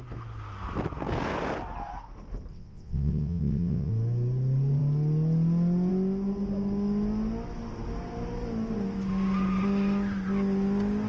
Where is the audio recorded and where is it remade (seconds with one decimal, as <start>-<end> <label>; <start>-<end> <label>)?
0.0-2.5 recorded; 2.5-3.9 remade; 3.9-11.1 recorded